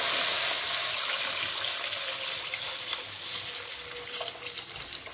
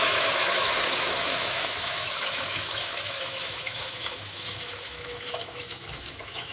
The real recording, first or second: first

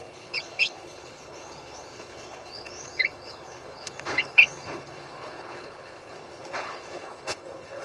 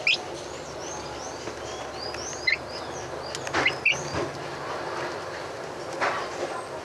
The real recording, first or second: second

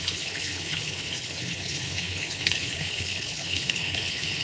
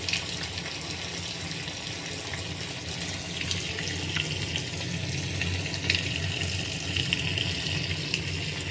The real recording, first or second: second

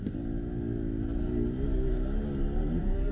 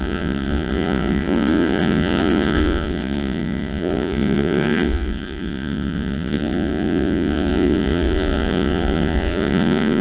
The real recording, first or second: first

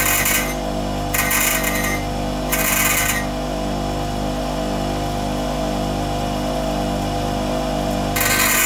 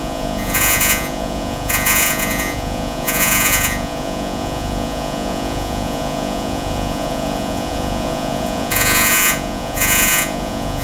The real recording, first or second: first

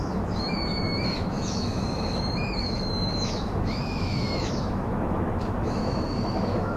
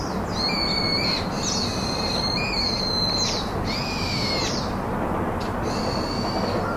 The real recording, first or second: second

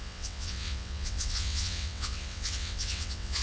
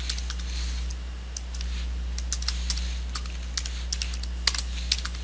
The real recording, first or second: second